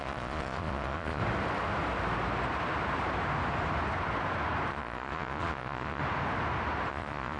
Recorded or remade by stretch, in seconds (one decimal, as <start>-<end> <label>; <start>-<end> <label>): 0.0-1.2 remade; 1.2-4.7 recorded; 4.7-6.0 remade; 6.0-6.9 recorded; 6.9-7.4 remade